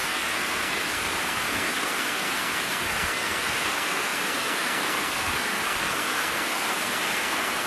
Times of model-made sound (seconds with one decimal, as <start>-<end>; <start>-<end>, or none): 0.0-7.7